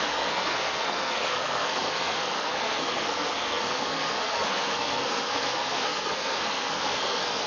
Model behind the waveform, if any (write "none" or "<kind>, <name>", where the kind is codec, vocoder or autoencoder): codec, SNAC